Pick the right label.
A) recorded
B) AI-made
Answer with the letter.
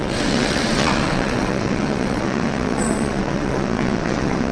B